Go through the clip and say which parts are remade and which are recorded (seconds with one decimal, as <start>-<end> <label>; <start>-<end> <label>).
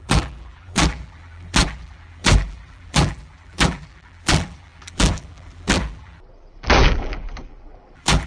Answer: 0.0-8.3 remade